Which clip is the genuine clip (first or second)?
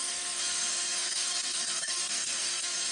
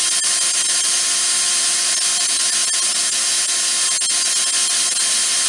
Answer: second